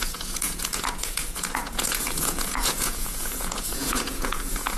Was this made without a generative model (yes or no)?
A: no